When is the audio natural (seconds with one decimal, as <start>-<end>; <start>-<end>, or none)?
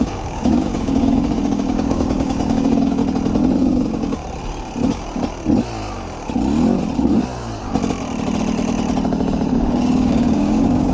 3.0-3.6; 4.2-9.5